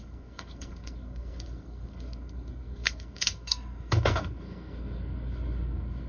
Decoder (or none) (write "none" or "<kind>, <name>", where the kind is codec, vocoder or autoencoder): codec, SNAC